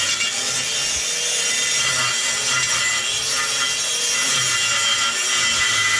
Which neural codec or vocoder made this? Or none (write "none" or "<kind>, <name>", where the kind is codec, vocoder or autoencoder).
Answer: none